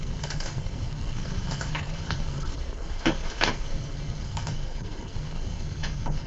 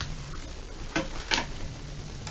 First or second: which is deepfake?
first